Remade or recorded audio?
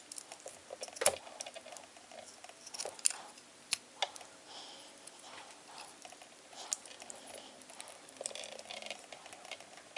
recorded